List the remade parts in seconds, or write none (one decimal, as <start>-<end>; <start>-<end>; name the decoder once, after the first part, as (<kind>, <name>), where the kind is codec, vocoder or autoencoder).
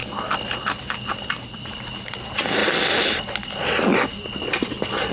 none